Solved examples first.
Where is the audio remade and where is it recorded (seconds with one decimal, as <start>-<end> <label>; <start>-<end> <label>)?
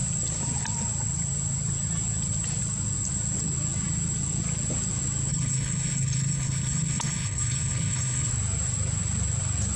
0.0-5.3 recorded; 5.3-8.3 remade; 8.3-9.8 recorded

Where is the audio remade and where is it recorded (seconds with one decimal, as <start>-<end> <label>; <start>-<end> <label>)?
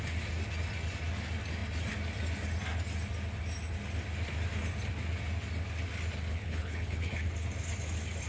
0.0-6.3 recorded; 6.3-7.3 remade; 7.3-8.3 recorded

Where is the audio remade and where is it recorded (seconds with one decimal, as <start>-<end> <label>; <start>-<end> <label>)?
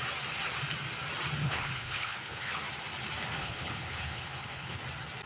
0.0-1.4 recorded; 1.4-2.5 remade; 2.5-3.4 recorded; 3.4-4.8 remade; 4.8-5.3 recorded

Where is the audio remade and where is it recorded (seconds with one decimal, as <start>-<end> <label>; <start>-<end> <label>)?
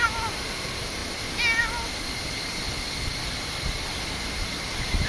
0.0-5.1 recorded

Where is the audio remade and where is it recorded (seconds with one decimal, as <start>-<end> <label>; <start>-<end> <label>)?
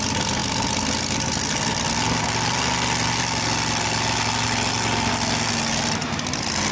0.0-6.7 recorded